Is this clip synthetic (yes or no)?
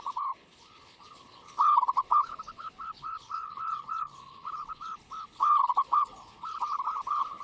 yes